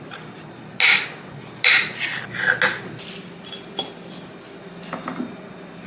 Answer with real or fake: real